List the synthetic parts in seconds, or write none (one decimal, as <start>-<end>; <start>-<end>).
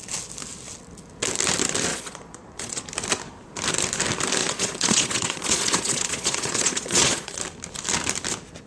1.9-2.8; 4.4-7.4